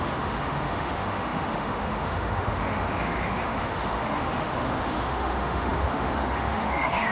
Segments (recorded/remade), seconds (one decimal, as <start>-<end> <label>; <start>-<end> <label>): 0.0-7.1 remade